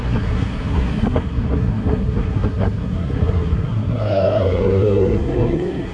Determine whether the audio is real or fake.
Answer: fake